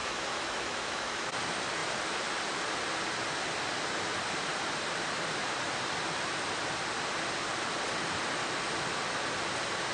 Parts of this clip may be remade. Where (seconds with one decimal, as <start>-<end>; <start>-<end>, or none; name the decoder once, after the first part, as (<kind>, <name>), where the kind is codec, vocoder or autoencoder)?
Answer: 0.0-1.3 (autoencoder, DAC-VAE)

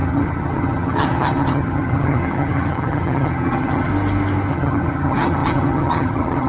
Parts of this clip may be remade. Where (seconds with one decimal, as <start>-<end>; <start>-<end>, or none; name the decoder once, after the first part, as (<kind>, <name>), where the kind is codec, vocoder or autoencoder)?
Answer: 0.0-3.9 (vocoder, HiFi-GAN); 4.5-6.5

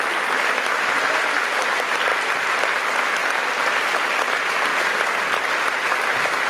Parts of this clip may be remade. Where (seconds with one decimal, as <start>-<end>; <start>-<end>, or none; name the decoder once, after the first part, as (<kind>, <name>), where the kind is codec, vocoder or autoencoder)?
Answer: none